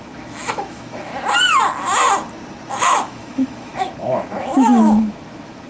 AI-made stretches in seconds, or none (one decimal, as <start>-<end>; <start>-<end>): 0.0-1.1; 2.7-5.7